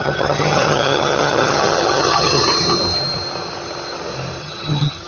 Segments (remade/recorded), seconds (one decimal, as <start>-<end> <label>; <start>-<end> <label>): 0.0-2.4 remade; 2.4-4.4 recorded; 4.4-5.1 remade